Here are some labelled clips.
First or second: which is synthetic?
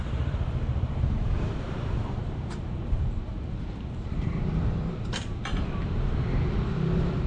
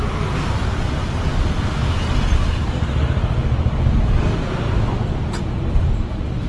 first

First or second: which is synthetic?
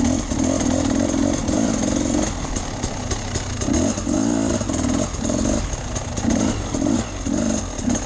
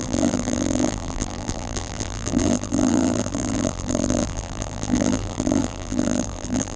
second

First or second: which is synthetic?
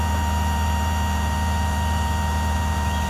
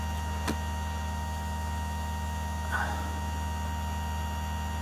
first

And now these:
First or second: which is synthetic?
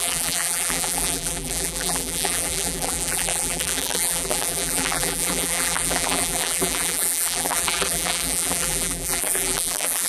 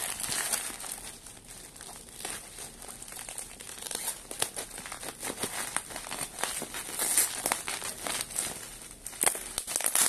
first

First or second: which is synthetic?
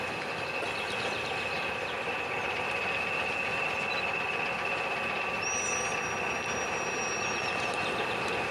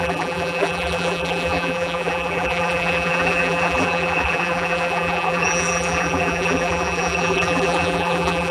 second